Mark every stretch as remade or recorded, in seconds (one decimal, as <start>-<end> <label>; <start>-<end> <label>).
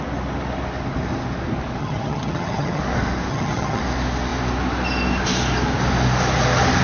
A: 0.0-1.8 recorded; 1.8-2.8 remade; 2.8-3.3 recorded; 3.3-3.8 remade; 3.8-6.8 recorded